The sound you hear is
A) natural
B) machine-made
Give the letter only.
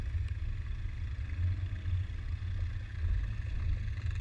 A